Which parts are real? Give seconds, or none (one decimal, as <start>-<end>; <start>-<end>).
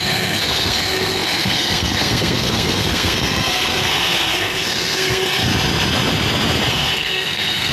5.5-6.7